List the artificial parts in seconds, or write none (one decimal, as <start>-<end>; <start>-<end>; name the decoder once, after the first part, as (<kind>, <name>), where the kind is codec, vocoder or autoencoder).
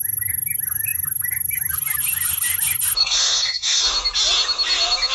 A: 3.0-3.8 (codec, SNAC)